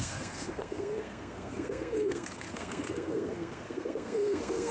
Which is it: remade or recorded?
remade